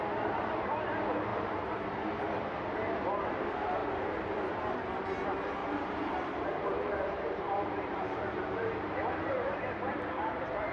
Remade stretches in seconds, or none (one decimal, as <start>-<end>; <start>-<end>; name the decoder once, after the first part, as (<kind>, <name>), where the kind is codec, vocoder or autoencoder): 1.3-1.8 (vocoder, BigVGAN v2); 3.8-4.4; 5.6-10.7